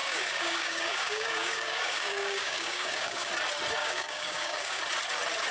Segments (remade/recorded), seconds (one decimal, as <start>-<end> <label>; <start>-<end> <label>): 0.0-3.3 remade; 3.3-3.8 recorded; 3.8-4.8 remade; 4.8-5.5 recorded